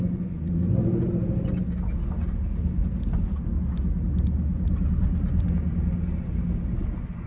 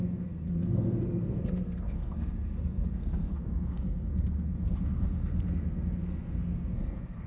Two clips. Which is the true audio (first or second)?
first